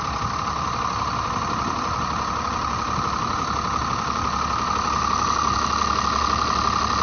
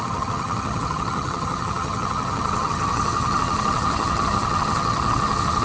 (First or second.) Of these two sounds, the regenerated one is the second